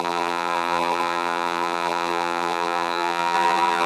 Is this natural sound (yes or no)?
no